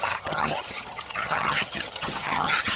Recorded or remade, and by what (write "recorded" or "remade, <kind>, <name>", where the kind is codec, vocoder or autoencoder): remade, vocoder, HiFi-GAN